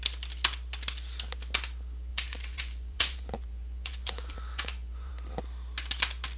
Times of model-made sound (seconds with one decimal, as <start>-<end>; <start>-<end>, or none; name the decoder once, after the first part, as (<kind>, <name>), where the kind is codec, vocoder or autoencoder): 2.1-5.1 (vocoder, Vocos)